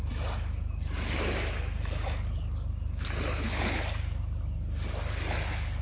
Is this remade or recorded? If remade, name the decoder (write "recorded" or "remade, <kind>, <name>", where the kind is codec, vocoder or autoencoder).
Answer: recorded